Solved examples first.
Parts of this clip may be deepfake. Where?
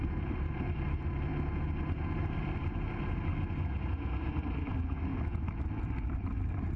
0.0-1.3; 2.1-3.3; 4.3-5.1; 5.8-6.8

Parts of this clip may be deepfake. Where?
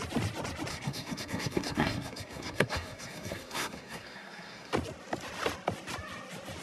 0.7-4.7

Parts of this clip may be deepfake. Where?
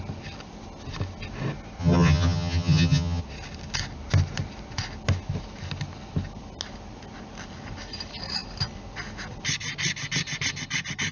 1.8-3.2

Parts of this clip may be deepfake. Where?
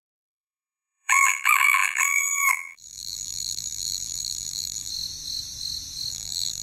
0.0-4.9; 6.1-6.6